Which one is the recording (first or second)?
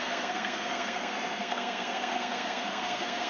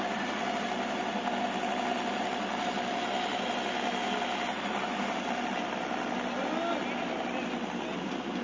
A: second